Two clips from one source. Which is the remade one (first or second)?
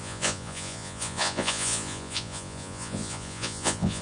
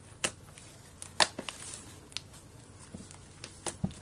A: first